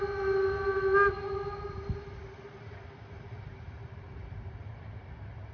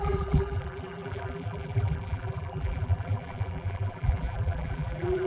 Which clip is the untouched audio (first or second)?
first